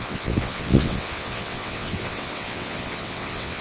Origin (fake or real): fake